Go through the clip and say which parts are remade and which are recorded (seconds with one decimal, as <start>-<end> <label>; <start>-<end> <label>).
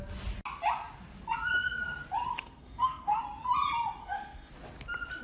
0.0-2.3 recorded; 2.3-3.2 remade; 3.2-4.0 recorded; 4.0-4.5 remade; 4.5-5.2 recorded